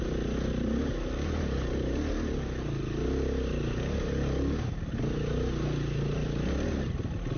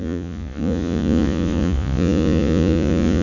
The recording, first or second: first